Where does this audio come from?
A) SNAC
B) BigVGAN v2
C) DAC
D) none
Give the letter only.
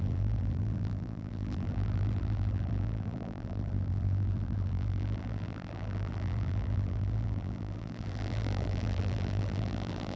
B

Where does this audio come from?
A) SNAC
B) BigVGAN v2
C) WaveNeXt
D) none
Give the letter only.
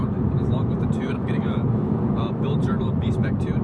B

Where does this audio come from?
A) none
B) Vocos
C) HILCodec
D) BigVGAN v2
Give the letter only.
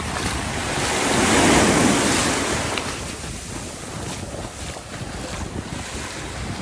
A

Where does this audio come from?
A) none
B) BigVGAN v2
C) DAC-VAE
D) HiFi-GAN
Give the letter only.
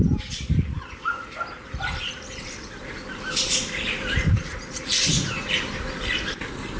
B